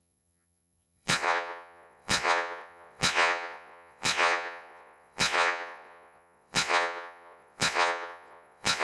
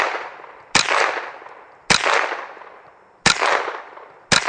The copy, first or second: first